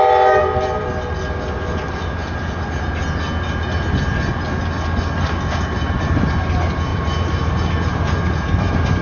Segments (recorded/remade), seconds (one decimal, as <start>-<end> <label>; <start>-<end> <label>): 0.0-6.9 recorded; 6.9-9.0 remade